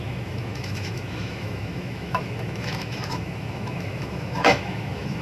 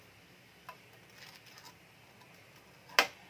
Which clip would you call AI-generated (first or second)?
first